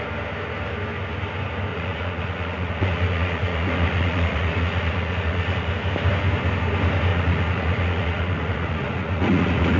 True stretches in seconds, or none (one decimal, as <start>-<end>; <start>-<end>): 0.0-1.7; 5.7-7.1